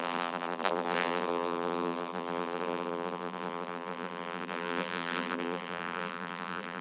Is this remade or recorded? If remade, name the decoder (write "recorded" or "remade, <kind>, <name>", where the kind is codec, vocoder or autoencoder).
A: remade, vocoder, BigVGAN v2